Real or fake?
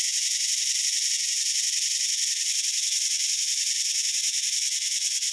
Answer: fake